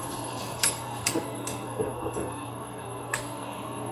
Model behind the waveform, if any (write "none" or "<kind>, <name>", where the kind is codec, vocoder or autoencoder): codec, SNAC